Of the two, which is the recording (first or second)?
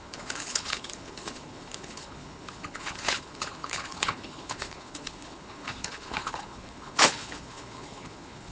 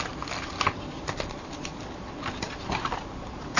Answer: second